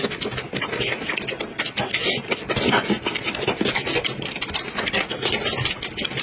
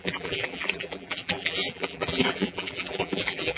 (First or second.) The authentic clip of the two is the first